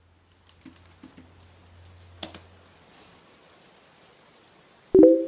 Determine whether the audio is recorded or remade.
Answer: recorded